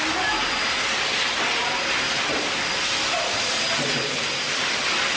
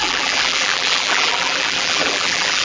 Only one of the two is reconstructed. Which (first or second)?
second